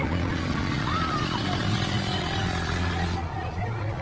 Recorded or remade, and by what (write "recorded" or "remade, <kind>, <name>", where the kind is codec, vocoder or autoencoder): remade, vocoder, Vocos